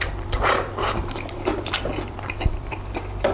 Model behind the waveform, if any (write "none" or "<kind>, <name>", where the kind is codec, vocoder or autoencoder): vocoder, BigVGAN v2